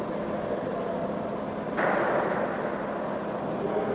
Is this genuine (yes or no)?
yes